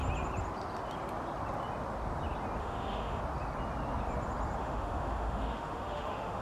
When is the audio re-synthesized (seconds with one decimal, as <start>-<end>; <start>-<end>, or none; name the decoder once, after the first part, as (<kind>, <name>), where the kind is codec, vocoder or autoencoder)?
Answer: 2.6-3.2 (autoencoder, DAC-VAE); 4.6-6.4